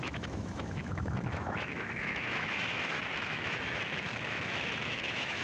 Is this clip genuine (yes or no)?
no